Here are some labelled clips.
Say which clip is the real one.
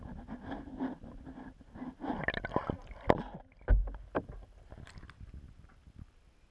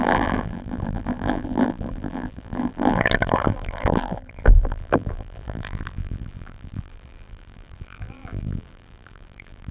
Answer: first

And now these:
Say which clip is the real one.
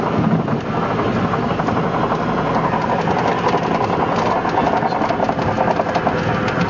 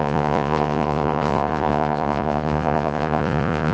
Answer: first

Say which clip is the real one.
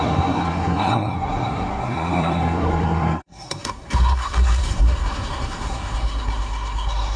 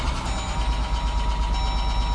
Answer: second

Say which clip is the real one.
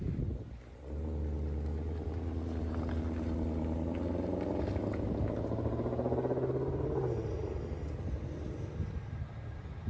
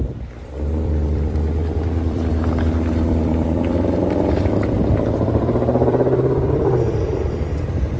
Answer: first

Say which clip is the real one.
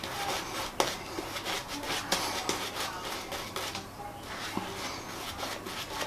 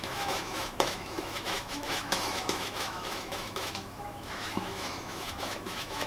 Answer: first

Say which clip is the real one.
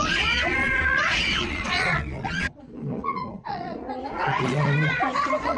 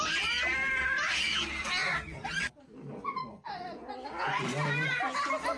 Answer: second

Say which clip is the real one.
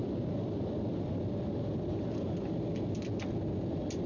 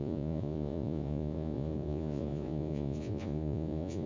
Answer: first